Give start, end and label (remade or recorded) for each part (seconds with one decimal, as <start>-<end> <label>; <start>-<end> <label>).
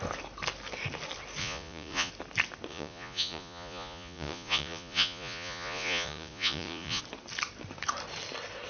0.0-1.4 recorded; 1.4-2.1 remade; 2.1-2.7 recorded; 2.7-7.0 remade; 7.0-8.7 recorded